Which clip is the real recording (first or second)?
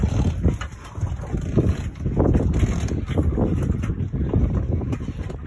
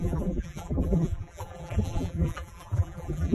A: first